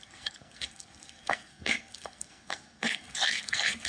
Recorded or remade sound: remade